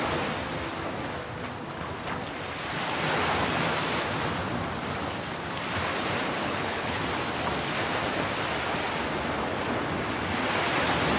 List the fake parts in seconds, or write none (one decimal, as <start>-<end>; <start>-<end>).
6.4-7.0